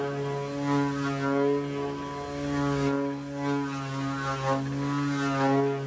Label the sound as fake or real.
real